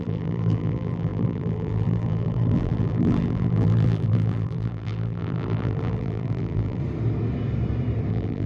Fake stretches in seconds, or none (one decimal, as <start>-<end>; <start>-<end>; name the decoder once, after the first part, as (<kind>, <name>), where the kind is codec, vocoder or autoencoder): 0.0-6.8 (vocoder, BigVGAN v2); 8.1-8.5